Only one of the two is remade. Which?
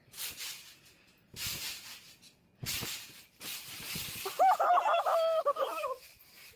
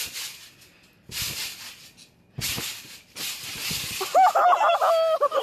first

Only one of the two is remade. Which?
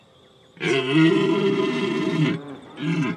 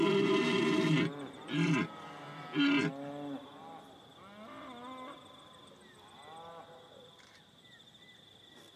first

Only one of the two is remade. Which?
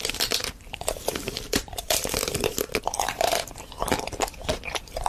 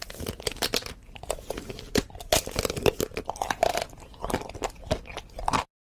first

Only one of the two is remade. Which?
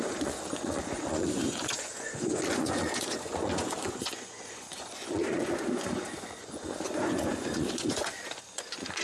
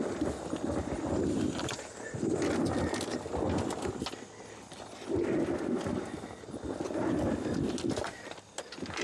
first